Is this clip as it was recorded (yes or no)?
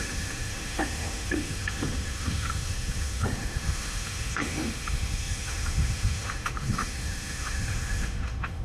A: no